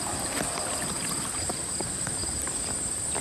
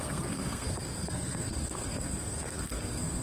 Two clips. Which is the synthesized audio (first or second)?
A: second